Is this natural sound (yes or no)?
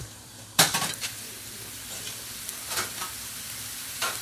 no